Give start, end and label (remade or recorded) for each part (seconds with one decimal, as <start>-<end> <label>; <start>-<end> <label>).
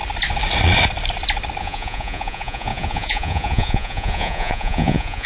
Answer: 0.0-1.6 recorded; 1.6-5.3 remade